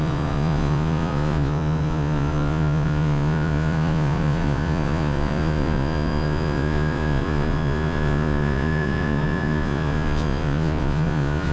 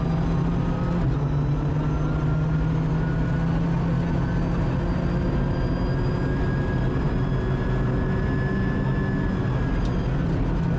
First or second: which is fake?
first